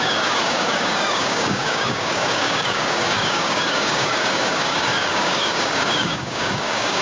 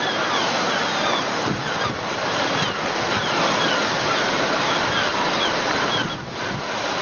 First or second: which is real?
second